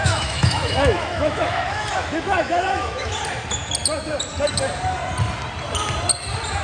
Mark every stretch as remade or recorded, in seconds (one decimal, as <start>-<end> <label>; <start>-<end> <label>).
0.0-3.2 remade; 3.2-6.6 recorded